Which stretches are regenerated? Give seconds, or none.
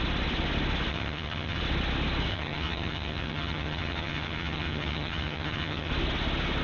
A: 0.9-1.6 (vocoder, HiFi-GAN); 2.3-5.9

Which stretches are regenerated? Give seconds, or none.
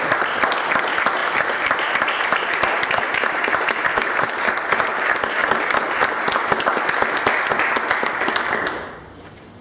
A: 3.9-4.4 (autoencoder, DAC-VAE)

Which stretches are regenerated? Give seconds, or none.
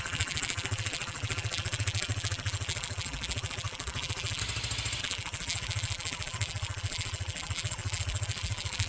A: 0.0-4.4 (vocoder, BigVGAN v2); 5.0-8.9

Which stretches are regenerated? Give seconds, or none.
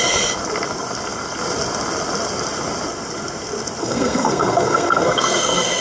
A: 3.8-5.8 (codec, SNAC)